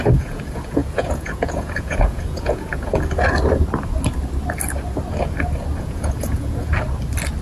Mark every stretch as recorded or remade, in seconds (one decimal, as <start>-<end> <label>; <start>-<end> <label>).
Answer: 0.0-2.9 remade; 2.9-5.8 recorded; 5.8-6.7 remade; 6.7-7.4 recorded